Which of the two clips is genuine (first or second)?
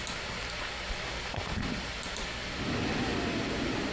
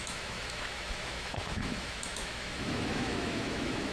first